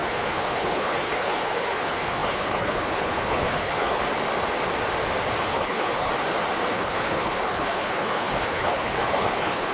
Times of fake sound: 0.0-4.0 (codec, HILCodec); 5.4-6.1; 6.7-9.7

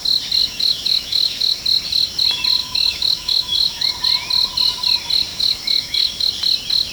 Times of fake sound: 0.4-1.6 (autoencoder, DAC-VAE); 2.6-3.9; 5.3-6.3

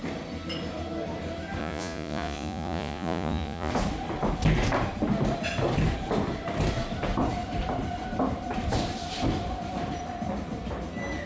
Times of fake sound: 1.6-3.7 (vocoder, Vocos)

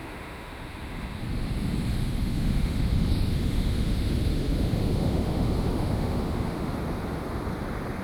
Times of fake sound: 0.0-1.2 (autoencoder, DAC-VAE); 1.9-6.7

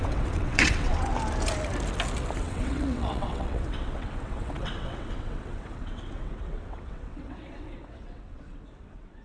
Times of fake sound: 0.0-1.1 (vocoder, WaveNeXt); 2.4-9.2

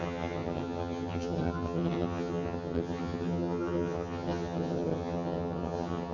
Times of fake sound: 0.0-6.1 (vocoder, HiFi-GAN)